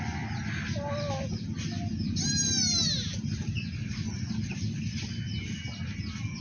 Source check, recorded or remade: recorded